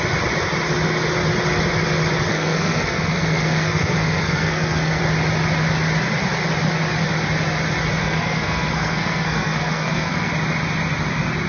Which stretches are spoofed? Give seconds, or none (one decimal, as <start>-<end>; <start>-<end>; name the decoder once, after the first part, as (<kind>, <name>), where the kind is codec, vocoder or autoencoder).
2.3-5.0 (codec, SNAC); 8.0-10.3